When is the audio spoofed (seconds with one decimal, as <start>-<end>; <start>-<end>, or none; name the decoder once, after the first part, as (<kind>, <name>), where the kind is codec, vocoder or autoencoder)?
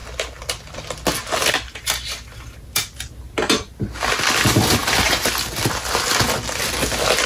4.8-5.3 (vocoder, BigVGAN v2)